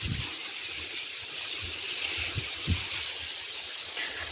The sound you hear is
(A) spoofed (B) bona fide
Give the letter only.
A